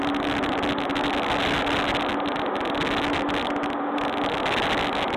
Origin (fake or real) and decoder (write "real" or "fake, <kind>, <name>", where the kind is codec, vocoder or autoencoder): real